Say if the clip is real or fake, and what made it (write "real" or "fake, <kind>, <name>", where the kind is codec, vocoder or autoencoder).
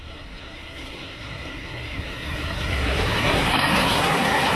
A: fake, codec, SNAC